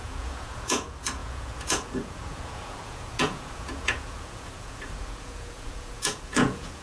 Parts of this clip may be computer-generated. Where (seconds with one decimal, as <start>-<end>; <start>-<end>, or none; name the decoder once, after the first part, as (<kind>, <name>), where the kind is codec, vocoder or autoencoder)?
0.0-6.8 (vocoder, Vocos)